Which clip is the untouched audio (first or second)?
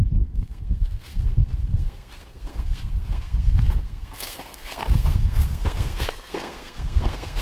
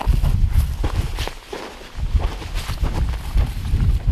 second